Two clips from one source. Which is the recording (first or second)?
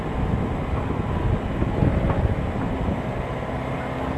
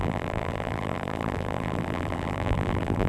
first